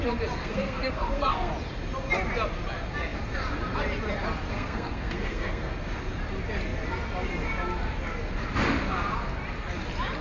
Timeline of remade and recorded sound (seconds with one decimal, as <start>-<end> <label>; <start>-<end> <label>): 0.0-0.4 recorded; 0.4-1.5 remade; 1.5-4.5 recorded; 4.5-5.7 remade; 5.7-10.2 recorded

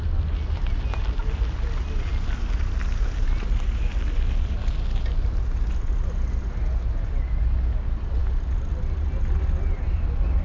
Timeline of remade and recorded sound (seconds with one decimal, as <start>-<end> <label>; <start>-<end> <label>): 0.0-10.4 recorded

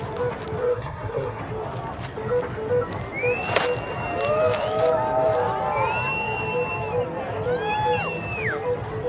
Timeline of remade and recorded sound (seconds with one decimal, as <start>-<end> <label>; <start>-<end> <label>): 0.0-0.6 recorded; 0.6-1.4 remade; 1.4-9.1 recorded

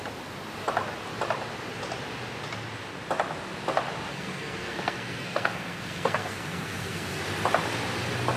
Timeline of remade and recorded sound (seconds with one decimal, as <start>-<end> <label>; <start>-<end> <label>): 0.0-4.1 recorded; 4.1-7.2 remade; 7.2-8.4 recorded

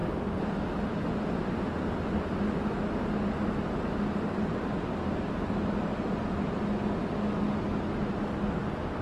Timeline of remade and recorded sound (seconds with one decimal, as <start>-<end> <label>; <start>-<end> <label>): 0.0-9.0 recorded

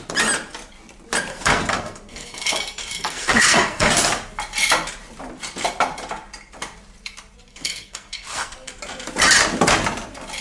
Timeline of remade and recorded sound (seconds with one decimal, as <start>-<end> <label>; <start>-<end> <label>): 0.0-1.3 recorded; 1.3-3.9 remade; 3.9-7.5 recorded; 7.5-8.7 remade; 8.7-10.4 recorded

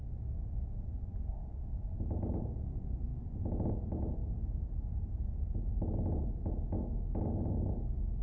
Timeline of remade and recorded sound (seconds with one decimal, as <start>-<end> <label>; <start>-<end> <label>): 0.0-8.2 recorded

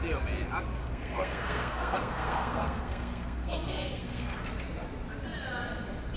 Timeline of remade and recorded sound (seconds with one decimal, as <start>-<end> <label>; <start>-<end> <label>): 0.0-0.8 recorded; 0.8-4.5 remade; 4.5-6.2 recorded